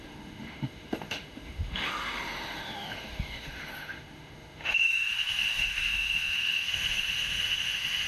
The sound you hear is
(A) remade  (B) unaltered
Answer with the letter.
A